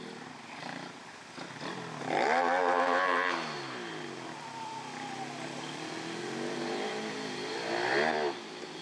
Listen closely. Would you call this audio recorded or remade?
recorded